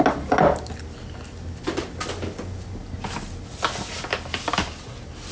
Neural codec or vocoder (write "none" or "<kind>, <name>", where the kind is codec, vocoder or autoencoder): none